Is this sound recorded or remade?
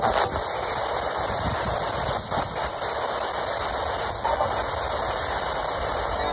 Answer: recorded